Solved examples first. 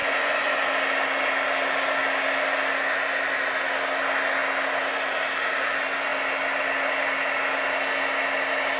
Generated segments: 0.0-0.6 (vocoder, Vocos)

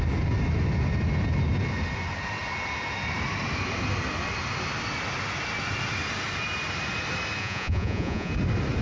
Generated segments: 7.4-8.3 (vocoder, Vocos)